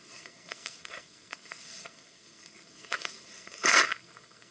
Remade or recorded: remade